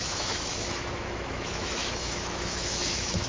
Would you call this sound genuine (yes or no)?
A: no